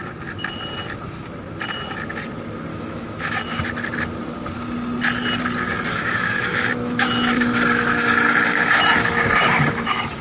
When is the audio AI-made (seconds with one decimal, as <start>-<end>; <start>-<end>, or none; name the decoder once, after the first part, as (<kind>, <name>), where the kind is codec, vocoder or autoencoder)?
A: 2.7-3.6 (autoencoder, DAC-VAE); 5.9-10.2